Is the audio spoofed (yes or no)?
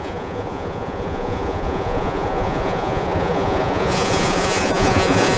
yes